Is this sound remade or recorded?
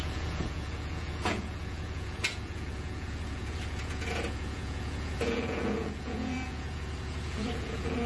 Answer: remade